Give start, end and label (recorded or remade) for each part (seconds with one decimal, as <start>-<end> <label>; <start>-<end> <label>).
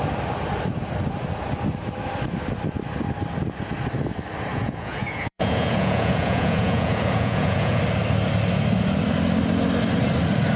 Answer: 0.0-4.5 recorded; 4.5-7.8 remade; 7.8-10.6 recorded